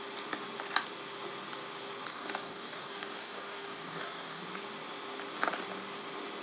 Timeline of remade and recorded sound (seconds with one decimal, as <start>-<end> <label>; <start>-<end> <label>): 0.0-2.1 recorded; 2.1-4.4 remade; 4.4-6.4 recorded